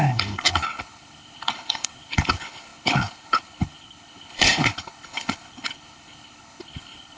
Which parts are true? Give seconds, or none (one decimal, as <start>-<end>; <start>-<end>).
none